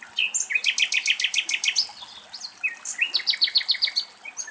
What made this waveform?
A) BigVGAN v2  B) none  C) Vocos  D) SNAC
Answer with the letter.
B